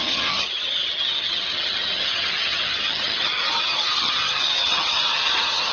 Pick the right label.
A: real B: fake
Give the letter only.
B